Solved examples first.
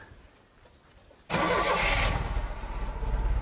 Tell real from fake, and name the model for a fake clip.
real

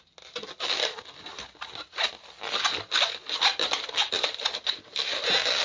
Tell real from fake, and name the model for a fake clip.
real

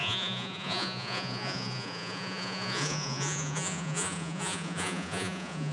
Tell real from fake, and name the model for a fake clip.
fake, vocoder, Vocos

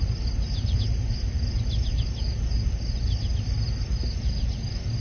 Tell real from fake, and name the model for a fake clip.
real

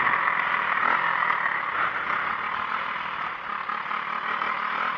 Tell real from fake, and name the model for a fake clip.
real